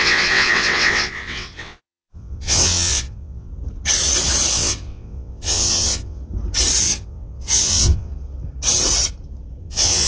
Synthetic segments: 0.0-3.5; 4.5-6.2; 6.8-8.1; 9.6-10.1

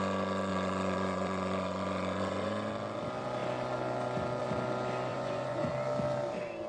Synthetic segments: 0.5-2.7; 5.1-5.7